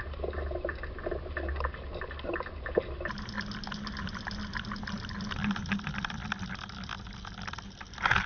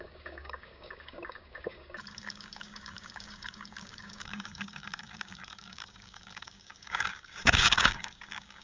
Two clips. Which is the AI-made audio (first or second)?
second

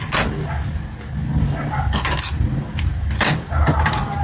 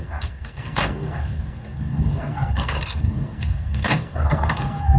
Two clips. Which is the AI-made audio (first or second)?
second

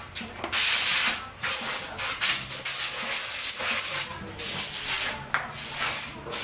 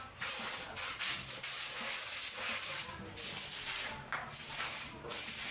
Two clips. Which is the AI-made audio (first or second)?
second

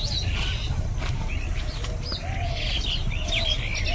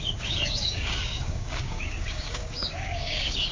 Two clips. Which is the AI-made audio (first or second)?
second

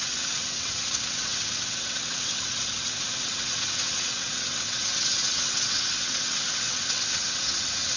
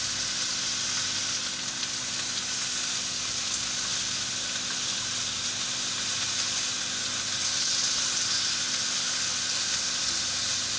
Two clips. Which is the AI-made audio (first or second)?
first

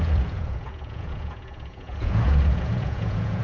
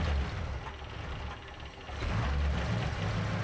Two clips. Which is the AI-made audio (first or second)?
first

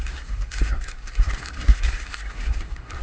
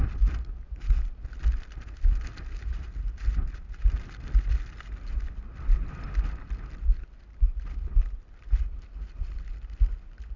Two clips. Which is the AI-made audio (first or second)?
first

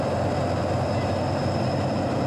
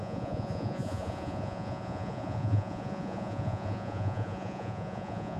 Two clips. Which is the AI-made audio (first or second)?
second